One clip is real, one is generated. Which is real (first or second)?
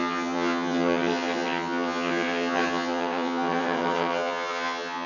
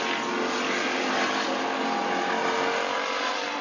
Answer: second